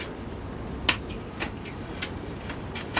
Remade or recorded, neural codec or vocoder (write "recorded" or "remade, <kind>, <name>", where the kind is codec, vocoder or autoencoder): recorded